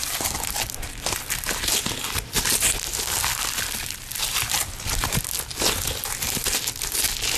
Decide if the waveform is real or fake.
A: real